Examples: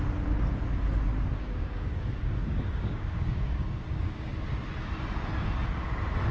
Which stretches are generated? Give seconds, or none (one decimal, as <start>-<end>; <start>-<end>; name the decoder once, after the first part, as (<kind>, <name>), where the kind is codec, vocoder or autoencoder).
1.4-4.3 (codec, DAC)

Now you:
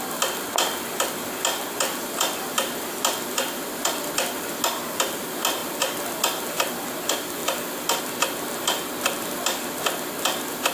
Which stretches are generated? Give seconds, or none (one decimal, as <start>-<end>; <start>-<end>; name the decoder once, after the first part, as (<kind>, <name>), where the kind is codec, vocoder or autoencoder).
5.6-6.2 (vocoder, BigVGAN v2)

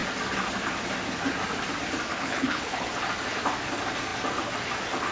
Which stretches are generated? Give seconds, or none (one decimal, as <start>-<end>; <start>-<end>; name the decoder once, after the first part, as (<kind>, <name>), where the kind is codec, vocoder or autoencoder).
2.1-2.9 (codec, HILCodec)